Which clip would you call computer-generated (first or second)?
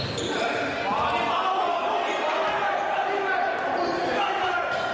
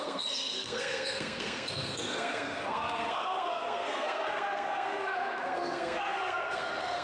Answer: second